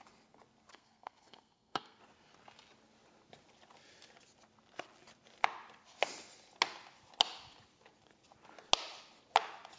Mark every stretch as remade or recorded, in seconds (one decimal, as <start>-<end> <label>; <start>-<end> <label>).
0.0-0.7 recorded; 0.7-2.0 remade; 2.0-9.8 recorded